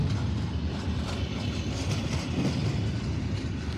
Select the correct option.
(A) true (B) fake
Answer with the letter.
A